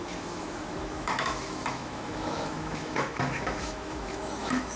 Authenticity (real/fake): fake